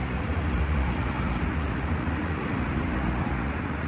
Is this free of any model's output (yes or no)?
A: no